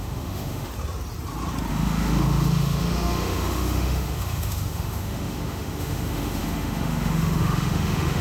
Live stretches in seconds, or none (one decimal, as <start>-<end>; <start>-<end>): 0.7-1.7

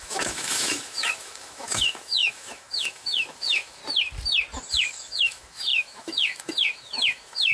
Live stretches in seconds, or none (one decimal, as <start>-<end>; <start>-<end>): 3.8-4.7

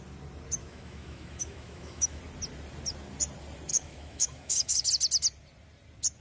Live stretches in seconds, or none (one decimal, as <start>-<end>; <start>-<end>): 0.0-0.6; 2.2-3.7; 4.9-6.2

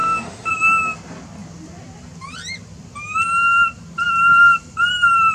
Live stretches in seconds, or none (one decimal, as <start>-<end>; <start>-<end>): 0.5-5.3